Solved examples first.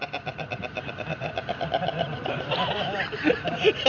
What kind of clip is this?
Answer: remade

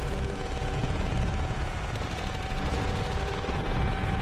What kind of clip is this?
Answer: remade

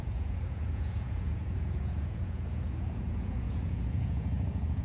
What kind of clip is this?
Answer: remade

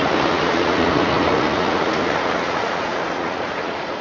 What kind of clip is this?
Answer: remade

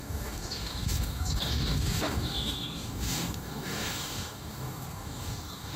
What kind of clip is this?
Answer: remade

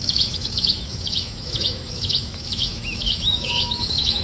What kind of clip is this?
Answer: remade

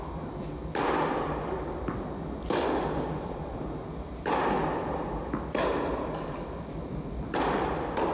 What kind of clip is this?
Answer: remade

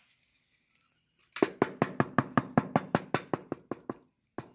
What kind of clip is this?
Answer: recorded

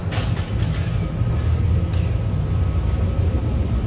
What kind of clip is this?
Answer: recorded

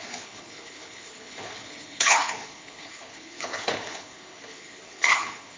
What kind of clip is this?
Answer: remade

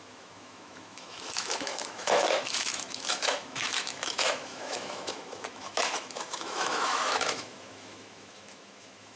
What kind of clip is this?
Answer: remade